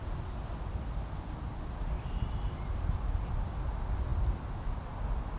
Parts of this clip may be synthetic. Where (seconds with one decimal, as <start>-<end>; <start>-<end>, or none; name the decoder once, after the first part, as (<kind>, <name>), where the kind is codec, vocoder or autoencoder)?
0.0-2.8 (vocoder, BigVGAN v2); 4.1-4.9

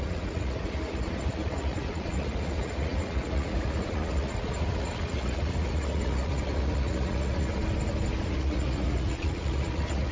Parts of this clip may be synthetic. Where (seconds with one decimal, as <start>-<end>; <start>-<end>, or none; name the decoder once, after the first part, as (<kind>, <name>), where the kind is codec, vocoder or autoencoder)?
0.0-7.5 (vocoder, Vocos); 8.2-10.1

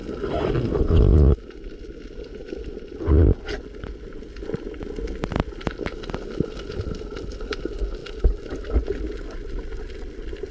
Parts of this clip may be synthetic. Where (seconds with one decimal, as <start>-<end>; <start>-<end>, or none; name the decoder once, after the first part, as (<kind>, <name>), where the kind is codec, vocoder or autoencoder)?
none

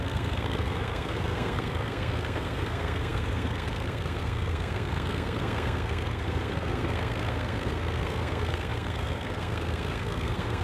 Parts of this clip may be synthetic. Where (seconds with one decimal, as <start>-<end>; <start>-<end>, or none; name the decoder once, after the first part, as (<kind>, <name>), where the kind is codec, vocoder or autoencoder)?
0.0-10.6 (codec, SNAC)

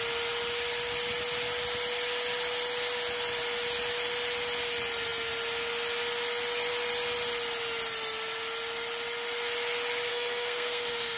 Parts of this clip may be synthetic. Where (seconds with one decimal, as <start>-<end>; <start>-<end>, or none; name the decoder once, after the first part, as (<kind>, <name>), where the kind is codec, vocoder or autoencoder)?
10.1-11.2 (codec, SNAC)

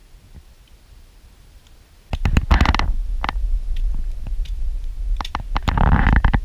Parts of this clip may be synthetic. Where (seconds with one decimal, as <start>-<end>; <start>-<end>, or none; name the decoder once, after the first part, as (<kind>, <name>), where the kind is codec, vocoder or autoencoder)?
none

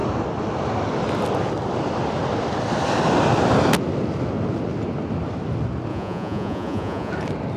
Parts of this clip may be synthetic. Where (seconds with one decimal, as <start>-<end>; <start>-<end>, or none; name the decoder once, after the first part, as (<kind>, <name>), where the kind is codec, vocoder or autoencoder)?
5.9-7.1 (vocoder, Vocos)

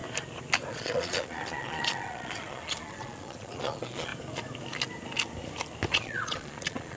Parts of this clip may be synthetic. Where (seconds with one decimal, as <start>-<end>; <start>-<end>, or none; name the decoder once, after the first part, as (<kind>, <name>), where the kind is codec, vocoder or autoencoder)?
0.7-4.1 (vocoder, Vocos); 5.9-7.0